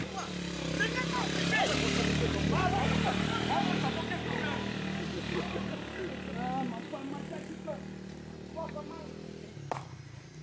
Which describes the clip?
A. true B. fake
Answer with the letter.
A